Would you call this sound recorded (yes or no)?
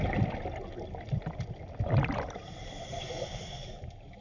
yes